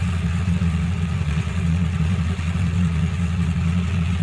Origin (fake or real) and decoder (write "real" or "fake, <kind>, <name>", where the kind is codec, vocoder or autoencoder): fake, vocoder, WaveNeXt